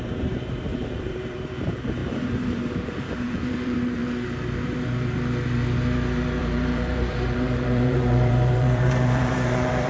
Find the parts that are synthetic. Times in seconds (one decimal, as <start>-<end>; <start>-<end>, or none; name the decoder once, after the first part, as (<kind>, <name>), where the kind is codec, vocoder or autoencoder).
0.0-4.0 (vocoder, BigVGAN v2); 6.4-9.9